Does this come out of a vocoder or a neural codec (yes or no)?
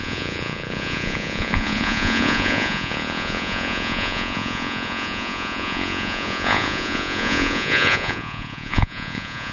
yes